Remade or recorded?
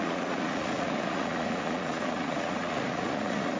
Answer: remade